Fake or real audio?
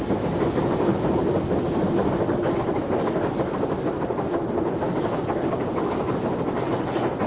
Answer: real